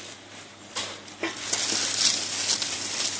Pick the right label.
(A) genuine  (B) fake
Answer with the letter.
A